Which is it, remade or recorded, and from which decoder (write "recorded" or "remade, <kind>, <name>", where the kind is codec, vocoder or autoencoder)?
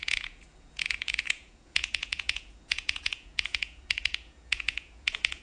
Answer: remade, vocoder, Vocos